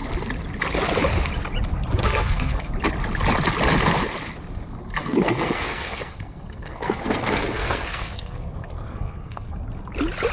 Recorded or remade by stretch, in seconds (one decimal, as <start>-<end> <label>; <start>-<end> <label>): 0.0-2.0 recorded; 2.0-2.7 remade; 2.7-5.0 recorded; 5.0-9.6 remade; 9.6-10.3 recorded